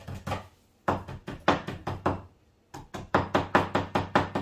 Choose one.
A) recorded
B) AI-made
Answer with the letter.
A